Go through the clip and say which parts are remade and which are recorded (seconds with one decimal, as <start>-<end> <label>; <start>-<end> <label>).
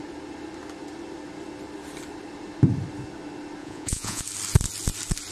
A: 0.0-3.6 recorded; 3.6-4.2 remade; 4.2-5.3 recorded